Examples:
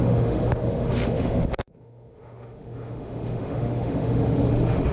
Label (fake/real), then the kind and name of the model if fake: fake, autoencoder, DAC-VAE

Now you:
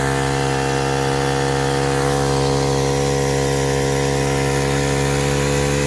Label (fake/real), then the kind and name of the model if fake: real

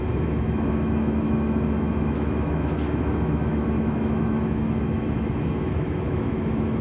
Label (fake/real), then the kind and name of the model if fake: fake, autoencoder, DAC-VAE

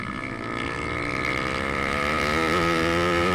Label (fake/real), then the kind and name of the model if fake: real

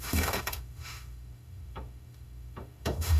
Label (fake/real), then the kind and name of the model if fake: fake, autoencoder, DAC-VAE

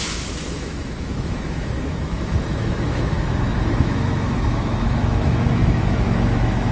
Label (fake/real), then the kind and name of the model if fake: fake, autoencoder, DAC-VAE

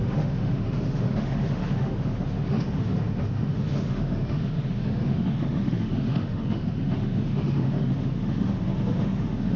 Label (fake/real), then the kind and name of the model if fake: fake, autoencoder, DAC-VAE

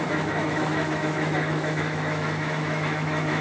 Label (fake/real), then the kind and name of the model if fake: fake, autoencoder, DAC-VAE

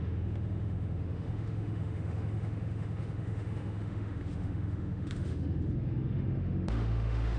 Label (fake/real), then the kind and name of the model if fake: fake, autoencoder, DAC-VAE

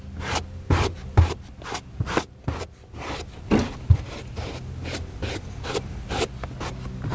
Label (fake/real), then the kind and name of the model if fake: real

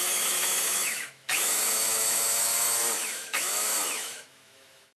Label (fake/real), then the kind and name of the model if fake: fake, autoencoder, DAC-VAE